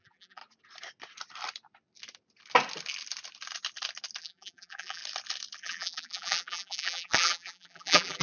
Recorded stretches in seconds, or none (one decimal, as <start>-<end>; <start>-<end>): 0.4-4.2; 5.0-5.6